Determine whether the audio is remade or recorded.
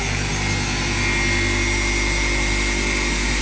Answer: recorded